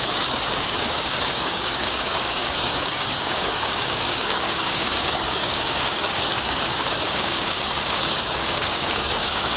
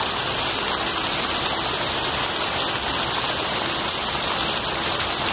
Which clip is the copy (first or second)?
first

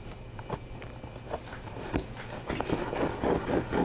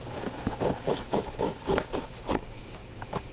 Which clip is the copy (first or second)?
second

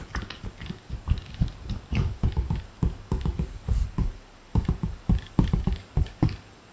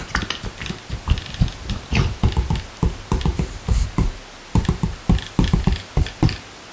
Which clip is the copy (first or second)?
first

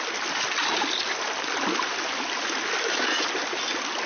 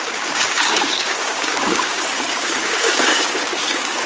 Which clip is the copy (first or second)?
second